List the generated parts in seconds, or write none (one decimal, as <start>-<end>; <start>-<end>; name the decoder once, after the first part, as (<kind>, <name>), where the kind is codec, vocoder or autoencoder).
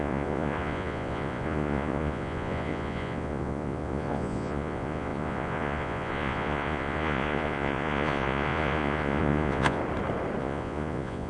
0.0-9.8 (vocoder, Vocos); 10.4-11.3